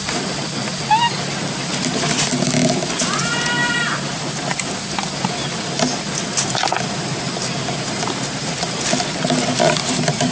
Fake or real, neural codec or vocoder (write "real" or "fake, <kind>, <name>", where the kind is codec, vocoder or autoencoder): real